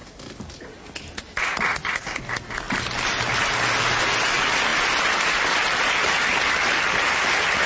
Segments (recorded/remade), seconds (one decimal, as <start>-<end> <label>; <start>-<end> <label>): 0.0-7.7 recorded